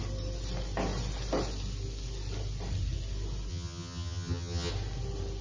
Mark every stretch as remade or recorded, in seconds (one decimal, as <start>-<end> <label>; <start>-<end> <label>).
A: 0.0-3.5 recorded; 3.5-4.7 remade; 4.7-5.4 recorded